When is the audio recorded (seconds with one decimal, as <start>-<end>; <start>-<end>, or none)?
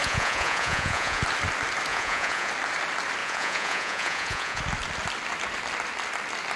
1.2-1.9; 2.5-3.2; 4.6-6.6